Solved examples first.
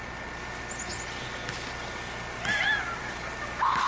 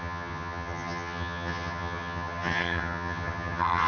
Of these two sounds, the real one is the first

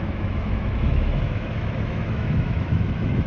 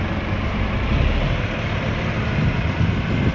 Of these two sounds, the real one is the second